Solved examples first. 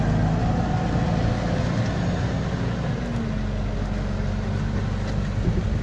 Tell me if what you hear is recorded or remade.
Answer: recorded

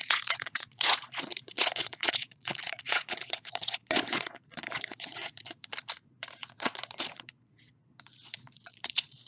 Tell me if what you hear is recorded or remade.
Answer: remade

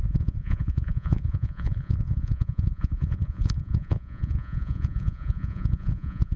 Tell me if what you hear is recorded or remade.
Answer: remade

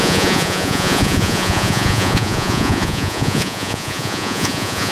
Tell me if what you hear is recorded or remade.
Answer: remade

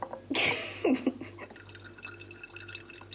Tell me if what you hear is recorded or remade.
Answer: recorded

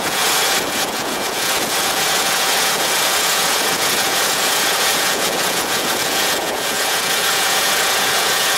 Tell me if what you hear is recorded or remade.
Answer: remade